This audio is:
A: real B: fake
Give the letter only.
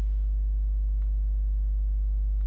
A